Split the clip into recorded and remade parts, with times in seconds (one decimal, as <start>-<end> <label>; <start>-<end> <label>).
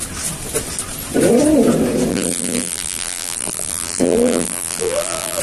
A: 0.0-2.1 recorded; 2.1-5.4 remade